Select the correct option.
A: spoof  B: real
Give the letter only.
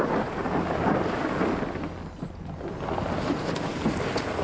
B